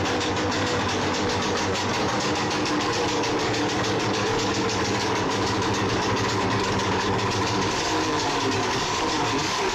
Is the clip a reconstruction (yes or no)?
yes